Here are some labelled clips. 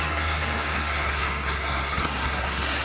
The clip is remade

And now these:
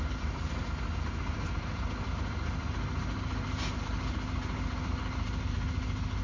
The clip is recorded